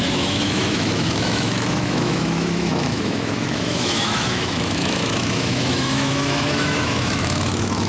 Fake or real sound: fake